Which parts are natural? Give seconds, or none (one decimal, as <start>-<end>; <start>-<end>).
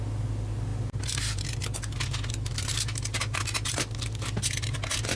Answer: 0.0-5.2